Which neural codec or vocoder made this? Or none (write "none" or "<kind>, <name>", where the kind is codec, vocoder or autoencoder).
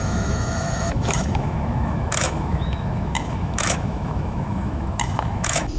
autoencoder, DAC-VAE